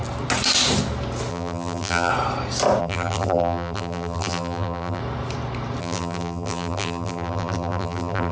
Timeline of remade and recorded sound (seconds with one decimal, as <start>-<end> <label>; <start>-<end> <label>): 0.0-1.3 recorded; 1.3-2.1 remade; 2.1-2.8 recorded; 2.8-5.0 remade; 5.0-5.8 recorded; 5.8-8.3 remade